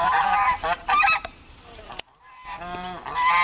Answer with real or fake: fake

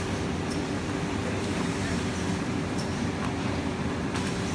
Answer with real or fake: fake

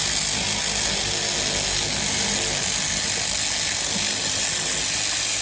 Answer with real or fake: real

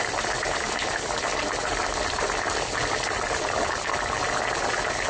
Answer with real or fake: fake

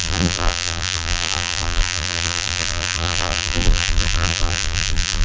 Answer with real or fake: fake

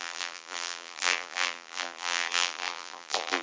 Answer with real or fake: fake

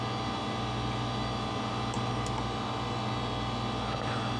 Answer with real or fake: real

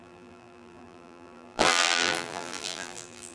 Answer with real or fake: fake